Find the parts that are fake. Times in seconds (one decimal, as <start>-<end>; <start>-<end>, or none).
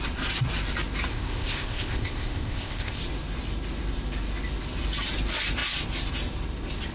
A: 1.1-3.0